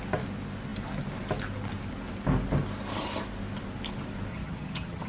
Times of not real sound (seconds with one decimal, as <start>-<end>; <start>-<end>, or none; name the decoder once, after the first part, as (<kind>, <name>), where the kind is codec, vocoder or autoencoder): 4.3-5.1 (vocoder, HiFi-GAN)